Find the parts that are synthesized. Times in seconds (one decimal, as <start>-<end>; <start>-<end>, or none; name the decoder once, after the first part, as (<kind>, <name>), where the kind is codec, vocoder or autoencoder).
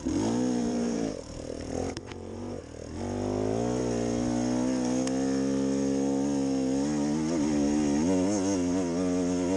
0.6-2.6 (vocoder, BigVGAN v2)